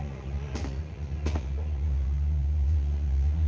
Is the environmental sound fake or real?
fake